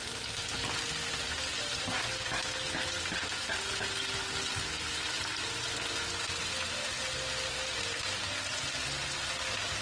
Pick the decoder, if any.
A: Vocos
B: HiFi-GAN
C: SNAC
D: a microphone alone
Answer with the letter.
D